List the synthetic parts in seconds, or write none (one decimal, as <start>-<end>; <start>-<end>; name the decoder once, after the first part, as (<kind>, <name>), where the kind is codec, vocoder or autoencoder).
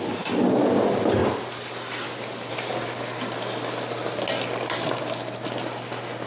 none